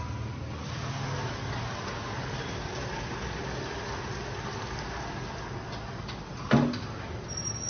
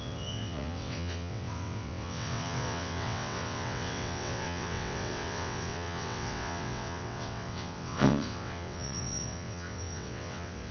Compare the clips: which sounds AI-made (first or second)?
second